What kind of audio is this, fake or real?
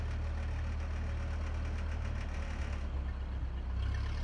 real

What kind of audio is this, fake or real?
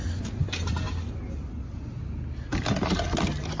real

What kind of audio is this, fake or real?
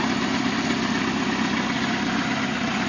real